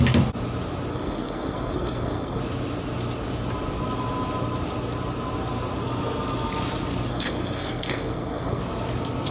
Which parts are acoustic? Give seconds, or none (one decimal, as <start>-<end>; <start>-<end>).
0.0-0.9; 2.4-7.1; 8.6-9.3